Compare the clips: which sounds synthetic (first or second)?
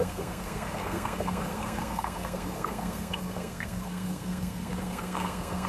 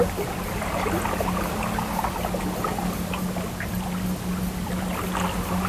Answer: first